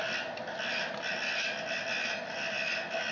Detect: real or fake real